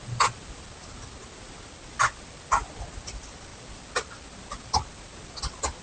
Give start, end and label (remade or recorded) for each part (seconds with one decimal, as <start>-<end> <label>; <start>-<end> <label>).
0.0-5.8 recorded